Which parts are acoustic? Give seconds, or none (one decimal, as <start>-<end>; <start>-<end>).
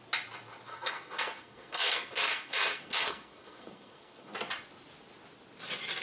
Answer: 0.0-0.7; 4.3-6.0